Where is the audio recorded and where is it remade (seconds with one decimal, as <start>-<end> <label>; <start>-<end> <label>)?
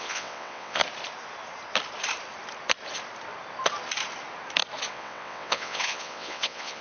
0.0-0.8 remade; 0.8-4.9 recorded; 4.9-6.8 remade